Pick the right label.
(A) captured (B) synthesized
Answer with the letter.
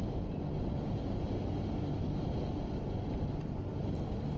A